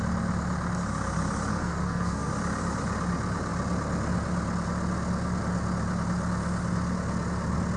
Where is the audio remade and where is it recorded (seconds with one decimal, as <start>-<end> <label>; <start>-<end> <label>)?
0.0-1.5 recorded; 1.5-2.3 remade; 2.3-7.8 recorded